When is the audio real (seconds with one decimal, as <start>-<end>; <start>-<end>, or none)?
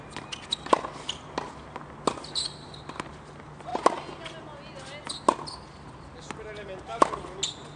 0.0-7.8